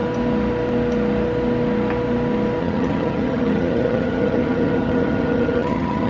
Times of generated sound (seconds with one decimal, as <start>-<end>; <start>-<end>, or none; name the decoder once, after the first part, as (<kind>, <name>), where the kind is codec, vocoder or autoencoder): 2.6-6.1 (vocoder, HiFi-GAN)